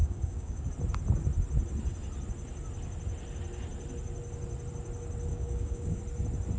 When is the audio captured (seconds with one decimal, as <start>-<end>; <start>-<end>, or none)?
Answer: 0.7-5.3; 6.0-6.6